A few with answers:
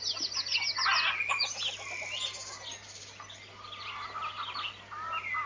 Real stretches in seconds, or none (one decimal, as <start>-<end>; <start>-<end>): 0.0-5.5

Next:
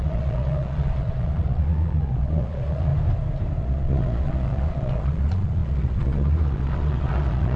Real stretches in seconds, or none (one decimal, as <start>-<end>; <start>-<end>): 2.9-3.6

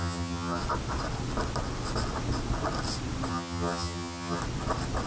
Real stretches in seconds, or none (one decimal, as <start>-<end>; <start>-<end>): 0.6-3.3; 4.4-5.1

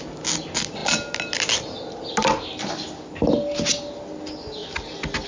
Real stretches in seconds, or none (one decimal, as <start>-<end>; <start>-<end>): 0.0-5.3

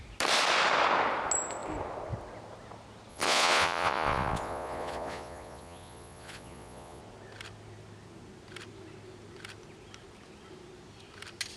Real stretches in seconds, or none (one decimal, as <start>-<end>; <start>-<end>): 0.0-3.1; 7.0-11.6